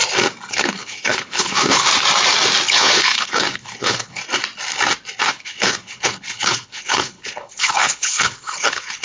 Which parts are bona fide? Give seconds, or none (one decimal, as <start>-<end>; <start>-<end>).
0.0-0.5; 1.9-2.7; 4.2-5.2